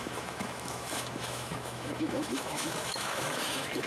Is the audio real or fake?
fake